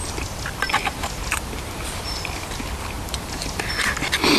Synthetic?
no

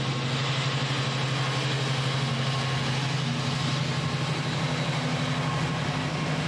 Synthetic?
no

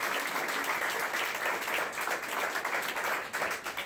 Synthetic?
no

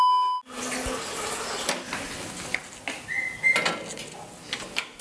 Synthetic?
no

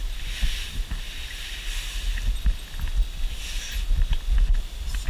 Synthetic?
no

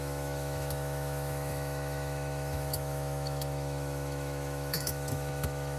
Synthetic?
yes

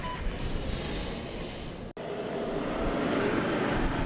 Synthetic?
no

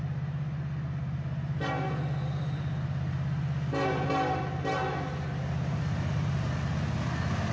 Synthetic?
no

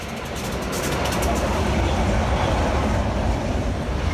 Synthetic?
no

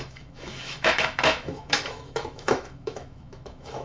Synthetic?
yes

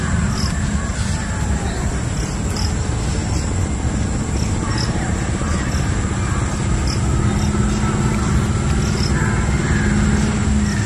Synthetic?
no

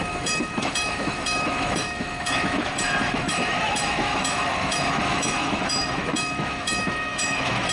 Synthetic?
yes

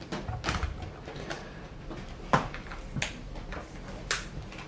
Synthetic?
no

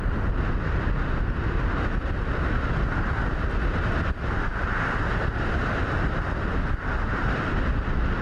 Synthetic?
no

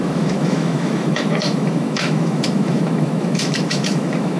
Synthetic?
yes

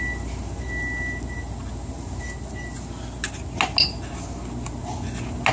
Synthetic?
no